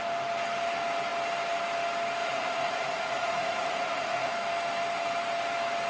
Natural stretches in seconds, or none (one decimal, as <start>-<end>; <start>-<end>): 0.0-2.2; 4.3-5.9